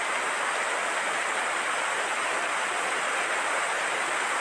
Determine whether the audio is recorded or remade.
recorded